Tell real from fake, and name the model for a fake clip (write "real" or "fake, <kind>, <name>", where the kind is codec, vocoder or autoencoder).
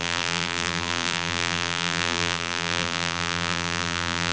fake, vocoder, BigVGAN v2